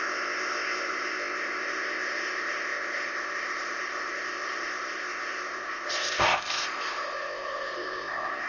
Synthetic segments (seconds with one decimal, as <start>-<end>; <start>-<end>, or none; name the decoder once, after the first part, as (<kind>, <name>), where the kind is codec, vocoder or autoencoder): 0.0-8.5 (codec, ZipCodec)